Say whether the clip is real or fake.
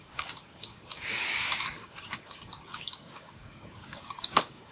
fake